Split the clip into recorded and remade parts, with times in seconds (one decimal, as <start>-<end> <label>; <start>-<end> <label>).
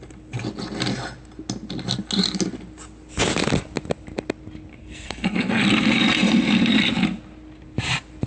0.0-4.8 recorded; 4.8-5.6 remade; 5.6-8.3 recorded